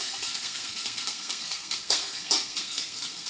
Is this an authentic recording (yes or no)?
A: no